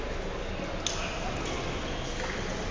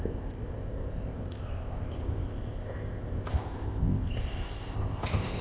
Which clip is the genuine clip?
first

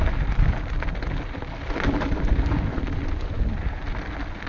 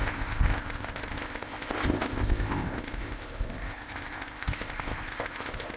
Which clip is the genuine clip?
first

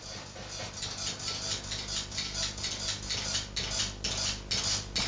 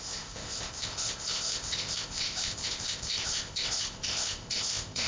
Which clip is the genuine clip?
first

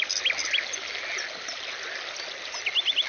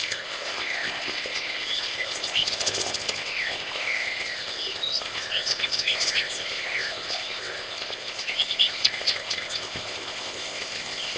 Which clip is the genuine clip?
first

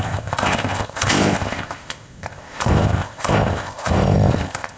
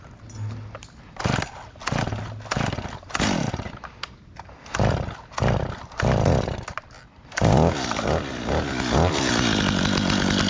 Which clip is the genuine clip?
second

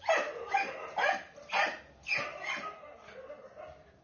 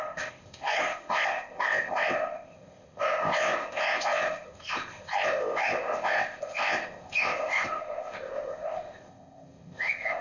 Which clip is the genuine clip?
first